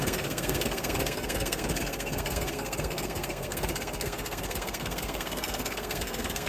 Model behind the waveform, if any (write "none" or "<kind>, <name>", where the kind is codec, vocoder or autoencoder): codec, SNAC